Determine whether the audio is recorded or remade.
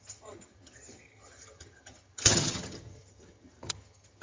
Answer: remade